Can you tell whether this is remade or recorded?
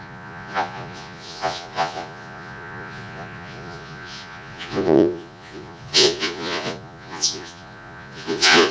remade